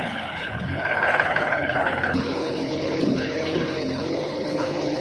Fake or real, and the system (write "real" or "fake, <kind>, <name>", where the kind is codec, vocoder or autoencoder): fake, codec, HILCodec